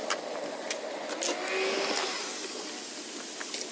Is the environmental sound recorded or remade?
recorded